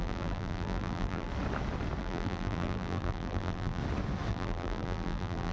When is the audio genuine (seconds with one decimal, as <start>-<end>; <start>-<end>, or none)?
1.3-2.0; 3.8-4.3